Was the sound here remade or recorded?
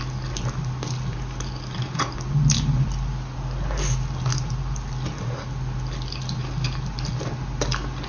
recorded